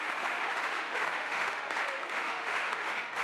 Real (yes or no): no